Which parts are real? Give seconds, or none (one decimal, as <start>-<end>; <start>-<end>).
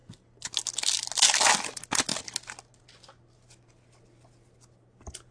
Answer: 0.5-5.3